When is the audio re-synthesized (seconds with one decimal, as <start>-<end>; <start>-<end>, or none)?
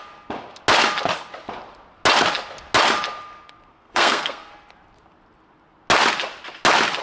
3.7-4.5